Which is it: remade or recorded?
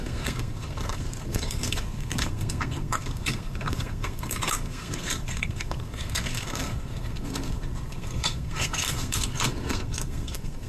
remade